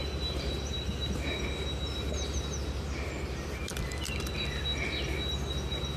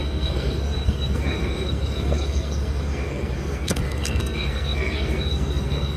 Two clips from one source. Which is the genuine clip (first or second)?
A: first